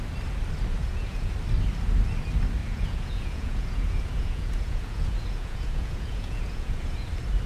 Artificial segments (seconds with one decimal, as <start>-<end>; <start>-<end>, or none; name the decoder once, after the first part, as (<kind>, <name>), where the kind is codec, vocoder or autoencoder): 0.8-1.3 (vocoder, Vocos); 2.6-7.1